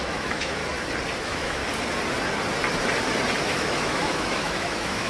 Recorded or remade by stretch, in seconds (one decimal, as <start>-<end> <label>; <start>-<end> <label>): 0.0-0.6 remade; 0.6-1.2 recorded; 1.2-1.6 remade; 1.6-3.4 recorded; 3.4-5.1 remade